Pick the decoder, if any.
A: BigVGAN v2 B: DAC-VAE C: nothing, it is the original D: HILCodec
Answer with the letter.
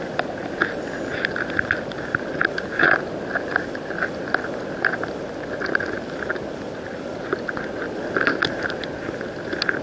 C